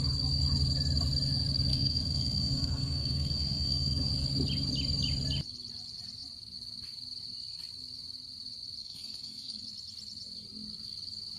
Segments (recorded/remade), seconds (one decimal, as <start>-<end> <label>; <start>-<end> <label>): 0.0-1.7 recorded; 1.7-4.1 remade; 4.1-8.8 recorded; 8.8-9.6 remade; 9.6-11.4 recorded